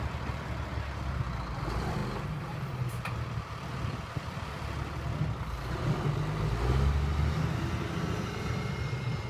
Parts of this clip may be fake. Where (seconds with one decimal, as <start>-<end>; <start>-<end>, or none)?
none